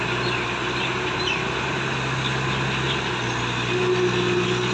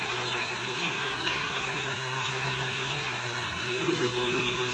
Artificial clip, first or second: second